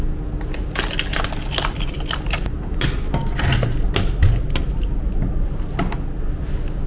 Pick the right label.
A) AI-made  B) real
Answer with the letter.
B